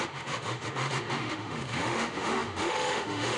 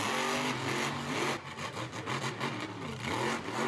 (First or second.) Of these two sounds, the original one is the second